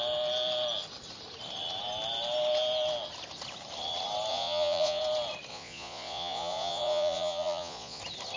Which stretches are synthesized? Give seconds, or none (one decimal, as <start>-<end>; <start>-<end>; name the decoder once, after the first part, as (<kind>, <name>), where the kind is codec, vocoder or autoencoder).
4.3-5.0 (vocoder, Vocos); 5.5-8.0